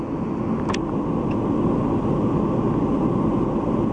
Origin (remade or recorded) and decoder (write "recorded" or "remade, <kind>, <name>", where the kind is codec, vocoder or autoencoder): recorded